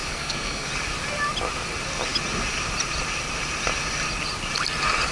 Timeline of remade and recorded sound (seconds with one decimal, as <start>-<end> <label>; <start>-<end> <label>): 0.0-0.7 remade; 0.7-5.1 recorded